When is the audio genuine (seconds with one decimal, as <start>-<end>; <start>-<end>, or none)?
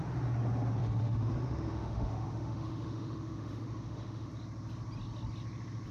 0.0-0.8; 4.3-5.9